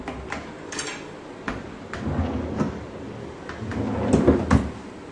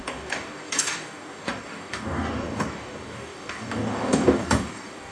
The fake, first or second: second